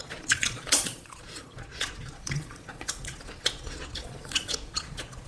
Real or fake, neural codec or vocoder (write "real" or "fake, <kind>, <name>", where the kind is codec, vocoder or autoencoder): fake, vocoder, Vocos